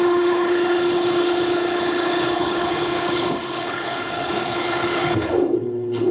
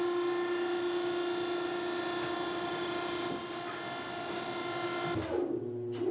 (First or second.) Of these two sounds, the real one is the second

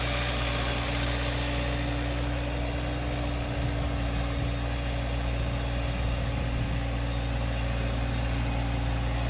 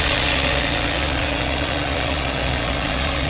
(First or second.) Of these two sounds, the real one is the first